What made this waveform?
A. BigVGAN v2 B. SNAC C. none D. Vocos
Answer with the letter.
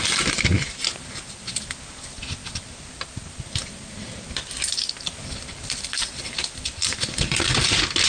C